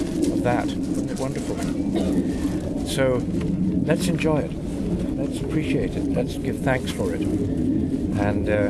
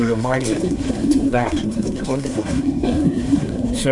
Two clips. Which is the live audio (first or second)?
first